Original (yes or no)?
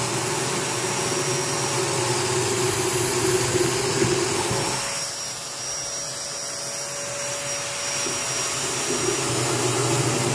yes